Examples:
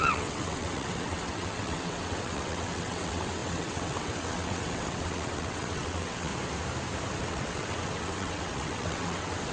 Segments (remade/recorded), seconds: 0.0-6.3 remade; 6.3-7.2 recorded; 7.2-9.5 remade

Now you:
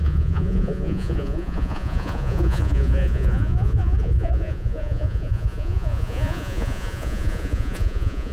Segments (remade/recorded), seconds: 0.0-8.3 remade